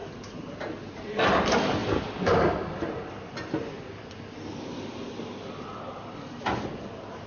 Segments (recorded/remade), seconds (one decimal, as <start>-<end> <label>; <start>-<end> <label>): 0.0-0.6 remade; 0.6-7.3 recorded